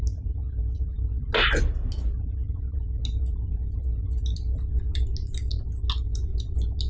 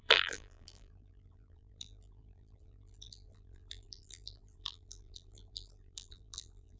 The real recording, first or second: first